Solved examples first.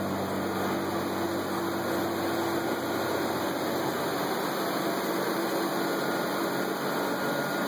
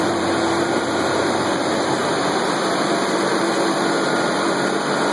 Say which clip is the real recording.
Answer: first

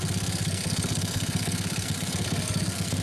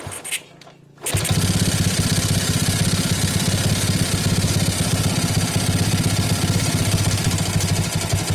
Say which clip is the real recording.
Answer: second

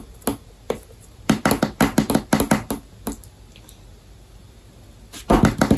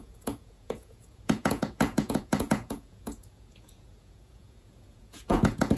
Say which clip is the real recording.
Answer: first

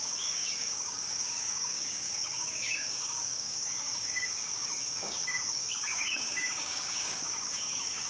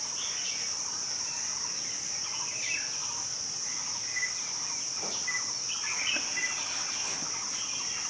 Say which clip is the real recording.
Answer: second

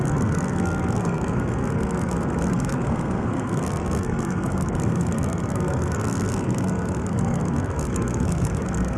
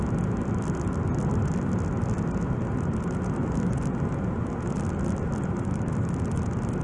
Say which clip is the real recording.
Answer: second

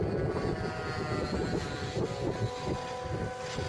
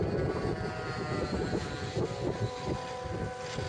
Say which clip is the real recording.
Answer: first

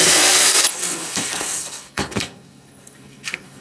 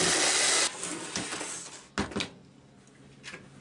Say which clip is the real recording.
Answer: second